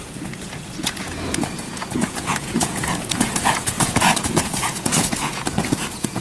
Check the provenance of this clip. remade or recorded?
remade